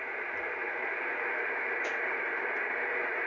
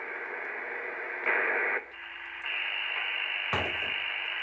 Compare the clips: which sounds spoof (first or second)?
first